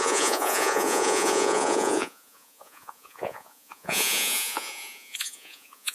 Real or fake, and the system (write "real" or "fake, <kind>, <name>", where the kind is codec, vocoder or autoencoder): fake, vocoder, Vocos